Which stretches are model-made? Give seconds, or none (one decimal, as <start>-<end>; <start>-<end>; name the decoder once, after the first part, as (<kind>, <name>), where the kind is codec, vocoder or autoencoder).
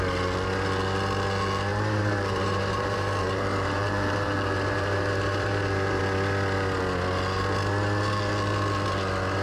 1.7-6.0 (vocoder, BigVGAN v2)